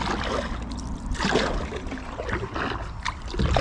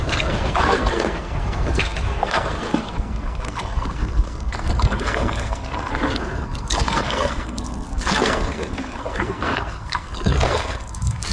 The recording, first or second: first